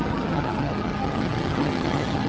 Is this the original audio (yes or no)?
no